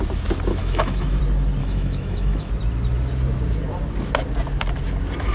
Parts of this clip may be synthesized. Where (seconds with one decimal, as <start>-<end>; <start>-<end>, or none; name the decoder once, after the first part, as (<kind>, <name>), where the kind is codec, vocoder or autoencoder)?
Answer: 0.6-1.2 (autoencoder, DAC-VAE); 1.6-2.5